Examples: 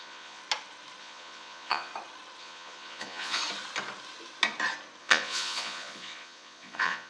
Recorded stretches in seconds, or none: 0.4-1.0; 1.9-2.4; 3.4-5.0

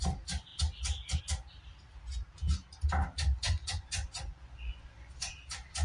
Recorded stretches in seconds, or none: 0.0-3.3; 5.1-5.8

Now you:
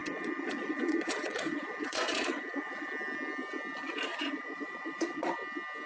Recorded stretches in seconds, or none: 2.9-4.1; 5.3-5.9

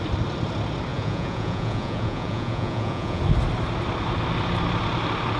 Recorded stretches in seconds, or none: 0.0-0.9; 3.2-5.4

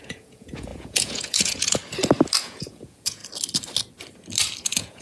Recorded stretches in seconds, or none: 1.8-2.4; 3.2-4.6

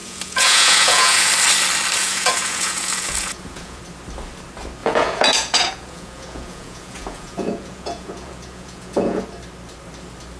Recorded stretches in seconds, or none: 1.3-2.0; 3.8-4.8; 9.2-10.4

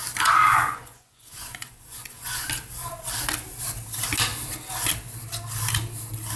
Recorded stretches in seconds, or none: 0.0-0.4; 2.5-6.4

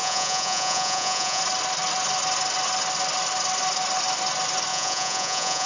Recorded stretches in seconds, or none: 1.4-4.7